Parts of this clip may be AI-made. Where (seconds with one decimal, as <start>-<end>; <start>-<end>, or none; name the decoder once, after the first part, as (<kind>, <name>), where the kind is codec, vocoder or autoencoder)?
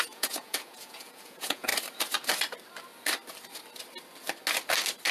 0.0-1.7 (vocoder, Vocos)